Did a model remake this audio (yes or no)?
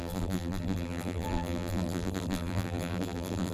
yes